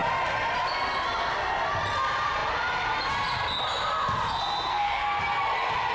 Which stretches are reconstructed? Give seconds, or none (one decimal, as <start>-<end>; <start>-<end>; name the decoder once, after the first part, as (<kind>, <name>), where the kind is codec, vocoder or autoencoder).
4.7-5.2 (codec, SNAC)